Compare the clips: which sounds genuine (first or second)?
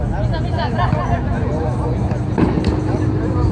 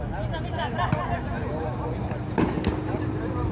first